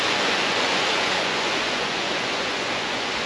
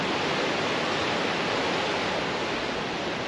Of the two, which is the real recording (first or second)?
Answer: second